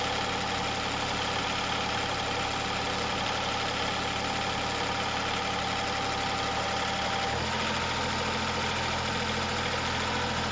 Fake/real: real